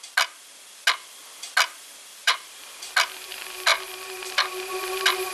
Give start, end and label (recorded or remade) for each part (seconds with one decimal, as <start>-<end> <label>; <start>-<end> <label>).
0.0-2.2 recorded; 2.2-2.8 remade; 2.8-5.3 recorded